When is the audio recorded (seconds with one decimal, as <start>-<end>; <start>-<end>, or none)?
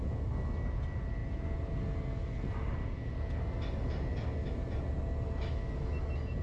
0.0-6.4